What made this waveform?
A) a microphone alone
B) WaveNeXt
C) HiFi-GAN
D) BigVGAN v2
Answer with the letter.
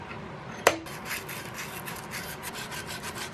A